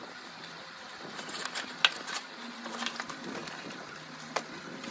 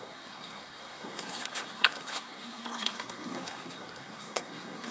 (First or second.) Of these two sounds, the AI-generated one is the second